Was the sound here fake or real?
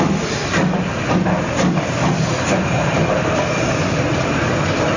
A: real